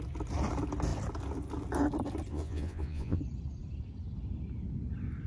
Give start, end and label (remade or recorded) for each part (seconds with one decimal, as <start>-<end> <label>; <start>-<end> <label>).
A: 0.0-2.3 recorded; 2.3-3.2 remade; 3.2-5.3 recorded